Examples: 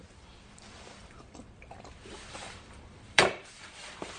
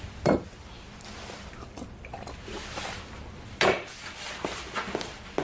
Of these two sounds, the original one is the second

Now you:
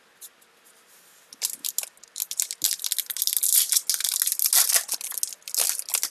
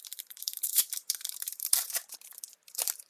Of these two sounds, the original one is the first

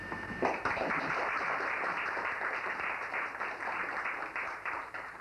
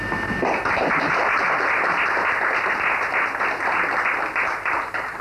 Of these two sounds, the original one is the second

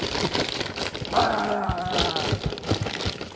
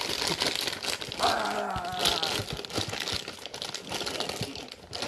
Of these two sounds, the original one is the second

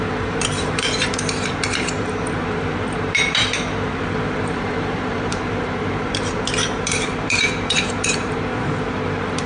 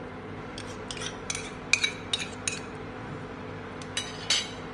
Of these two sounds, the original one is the second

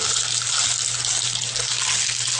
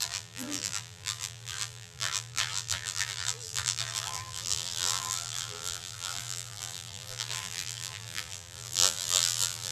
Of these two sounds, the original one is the first